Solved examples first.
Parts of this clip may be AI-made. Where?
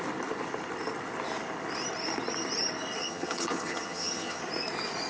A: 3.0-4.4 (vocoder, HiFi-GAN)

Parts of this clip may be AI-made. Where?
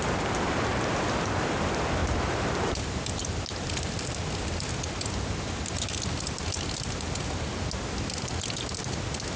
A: none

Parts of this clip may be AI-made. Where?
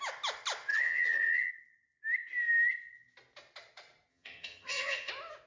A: 0.7-1.5 (vocoder, HiFi-GAN); 4.1-5.1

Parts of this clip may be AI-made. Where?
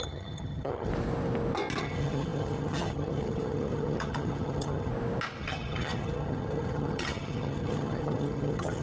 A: 0.0-0.9 (vocoder, HiFi-GAN); 1.8-4.9; 5.4-8.8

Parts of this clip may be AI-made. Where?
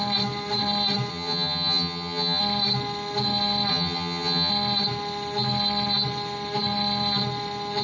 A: 1.1-2.4 (vocoder, HiFi-GAN); 3.7-4.5